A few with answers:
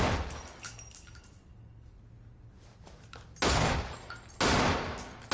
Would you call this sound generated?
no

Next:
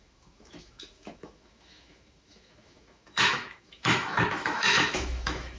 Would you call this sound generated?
yes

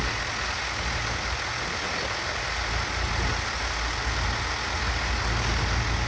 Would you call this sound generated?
no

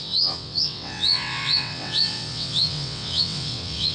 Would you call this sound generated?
yes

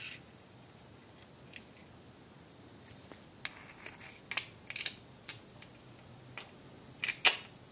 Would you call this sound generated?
no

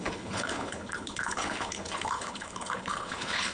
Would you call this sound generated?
yes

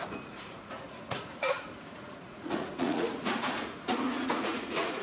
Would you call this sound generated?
yes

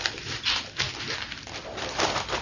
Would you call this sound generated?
no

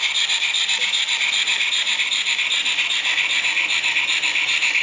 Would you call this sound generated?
yes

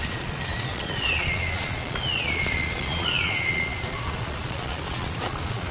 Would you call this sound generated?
yes